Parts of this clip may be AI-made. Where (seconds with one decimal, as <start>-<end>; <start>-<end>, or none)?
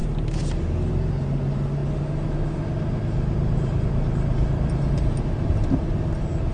none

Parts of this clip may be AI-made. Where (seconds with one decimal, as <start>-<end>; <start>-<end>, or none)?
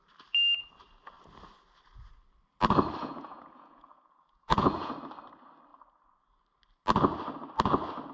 3.0-4.9